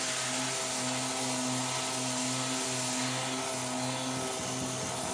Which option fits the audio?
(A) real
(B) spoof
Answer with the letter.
A